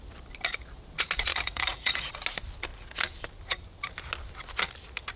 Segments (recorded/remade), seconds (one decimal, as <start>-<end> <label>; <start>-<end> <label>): 0.0-1.3 recorded; 1.3-2.1 remade; 2.1-5.2 recorded